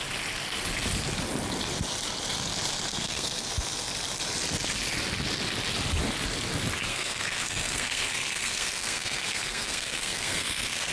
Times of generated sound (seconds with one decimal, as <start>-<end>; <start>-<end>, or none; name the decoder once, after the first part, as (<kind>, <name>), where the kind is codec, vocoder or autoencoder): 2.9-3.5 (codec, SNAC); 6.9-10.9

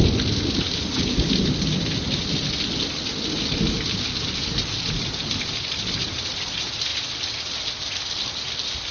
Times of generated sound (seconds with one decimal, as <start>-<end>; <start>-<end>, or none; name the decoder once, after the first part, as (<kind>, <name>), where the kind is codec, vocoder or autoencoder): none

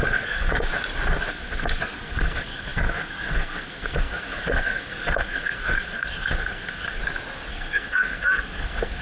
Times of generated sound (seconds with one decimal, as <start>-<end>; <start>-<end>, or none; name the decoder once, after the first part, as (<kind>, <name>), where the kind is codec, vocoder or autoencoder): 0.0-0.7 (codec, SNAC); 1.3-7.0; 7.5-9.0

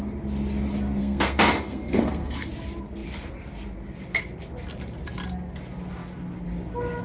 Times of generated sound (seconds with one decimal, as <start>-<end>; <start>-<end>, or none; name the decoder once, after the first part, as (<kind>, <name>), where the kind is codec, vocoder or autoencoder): 1.0-2.5 (codec, SNAC)

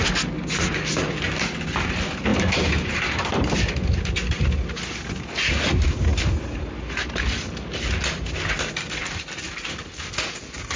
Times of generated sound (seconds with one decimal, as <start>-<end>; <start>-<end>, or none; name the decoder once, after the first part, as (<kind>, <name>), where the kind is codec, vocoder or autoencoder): 2.3-3.9 (vocoder, BigVGAN v2)

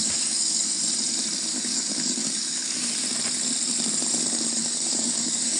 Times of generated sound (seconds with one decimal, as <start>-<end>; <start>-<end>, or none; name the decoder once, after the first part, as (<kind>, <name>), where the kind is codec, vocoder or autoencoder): 0.0-0.8 (codec, DAC); 1.5-2.9; 4.6-5.6